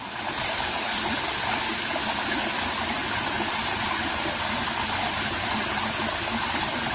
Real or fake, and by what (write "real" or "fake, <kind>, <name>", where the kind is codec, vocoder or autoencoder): real